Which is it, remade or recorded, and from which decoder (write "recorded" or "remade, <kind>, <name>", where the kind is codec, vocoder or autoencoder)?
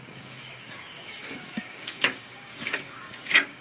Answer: remade, codec, DAC